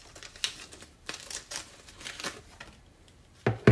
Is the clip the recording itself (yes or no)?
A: yes